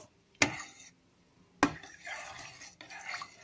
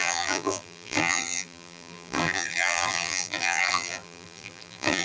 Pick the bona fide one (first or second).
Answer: first